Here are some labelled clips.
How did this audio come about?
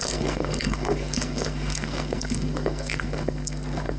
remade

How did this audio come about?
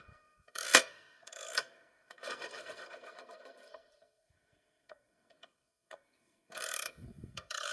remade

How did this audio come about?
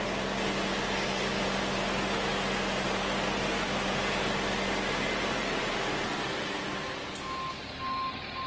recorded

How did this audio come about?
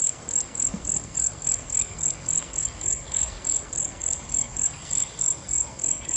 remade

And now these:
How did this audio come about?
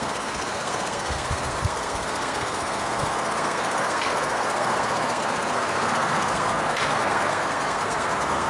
remade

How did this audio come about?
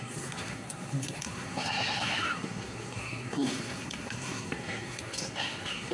remade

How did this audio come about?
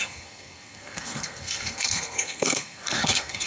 remade